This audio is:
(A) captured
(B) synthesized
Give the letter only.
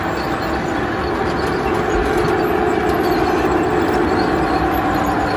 A